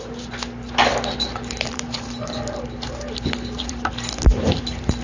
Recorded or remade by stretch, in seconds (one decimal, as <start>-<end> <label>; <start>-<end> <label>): 0.0-0.9 recorded; 0.9-3.9 remade; 3.9-5.0 recorded